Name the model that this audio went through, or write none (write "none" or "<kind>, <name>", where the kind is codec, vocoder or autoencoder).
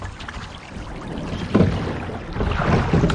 none